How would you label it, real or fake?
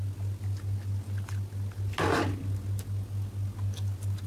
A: real